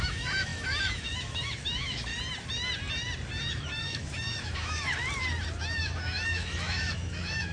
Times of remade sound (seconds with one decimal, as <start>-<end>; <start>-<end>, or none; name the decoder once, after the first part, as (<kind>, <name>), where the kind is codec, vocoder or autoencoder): 0.0-2.1 (autoencoder, DAC-VAE); 3.5-5.0; 5.6-7.5